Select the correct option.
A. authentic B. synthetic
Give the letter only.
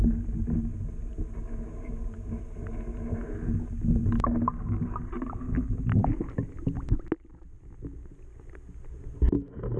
A